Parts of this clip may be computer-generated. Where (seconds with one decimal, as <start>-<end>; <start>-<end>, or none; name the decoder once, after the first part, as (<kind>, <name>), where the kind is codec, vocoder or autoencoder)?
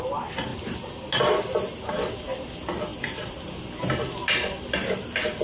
none